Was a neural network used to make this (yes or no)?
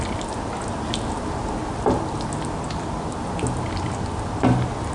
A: no